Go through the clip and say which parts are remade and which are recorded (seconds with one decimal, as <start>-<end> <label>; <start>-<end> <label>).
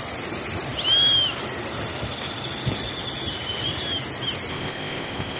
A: 0.0-4.5 recorded; 4.5-5.4 remade